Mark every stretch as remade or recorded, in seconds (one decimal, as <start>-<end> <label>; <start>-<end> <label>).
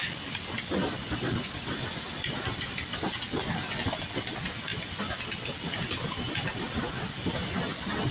0.0-1.0 recorded; 1.0-1.7 remade; 1.7-8.1 recorded